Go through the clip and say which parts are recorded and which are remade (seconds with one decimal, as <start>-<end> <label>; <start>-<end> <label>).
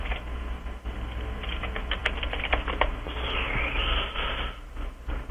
0.0-5.3 recorded